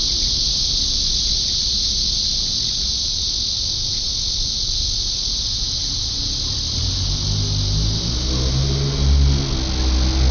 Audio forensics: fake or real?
real